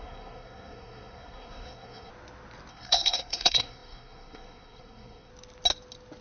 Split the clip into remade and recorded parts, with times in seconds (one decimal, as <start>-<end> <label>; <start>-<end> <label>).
0.0-2.1 remade; 2.1-2.7 recorded; 2.7-5.3 remade; 5.3-6.2 recorded